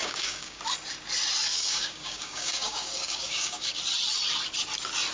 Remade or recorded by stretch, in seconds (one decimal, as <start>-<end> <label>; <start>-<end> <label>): 0.0-0.6 remade; 0.6-1.5 recorded; 1.5-3.8 remade; 3.8-5.1 recorded